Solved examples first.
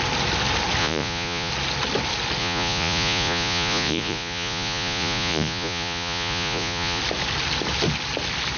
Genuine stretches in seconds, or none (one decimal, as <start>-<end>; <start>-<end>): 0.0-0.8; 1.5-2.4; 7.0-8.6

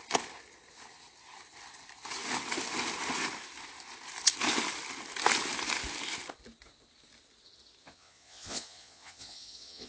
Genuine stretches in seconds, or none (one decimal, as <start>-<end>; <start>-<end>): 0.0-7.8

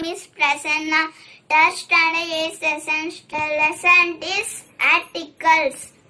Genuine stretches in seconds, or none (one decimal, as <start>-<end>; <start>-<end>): 0.0-6.1

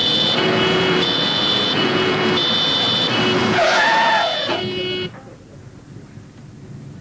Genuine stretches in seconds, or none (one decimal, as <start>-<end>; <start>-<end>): 2.2-3.4; 4.6-7.0

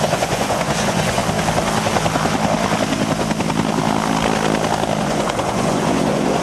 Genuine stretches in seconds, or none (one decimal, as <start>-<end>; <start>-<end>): 1.2-5.0